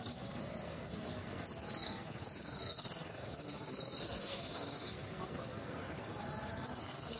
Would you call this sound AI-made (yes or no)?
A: yes